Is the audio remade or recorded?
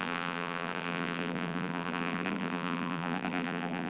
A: remade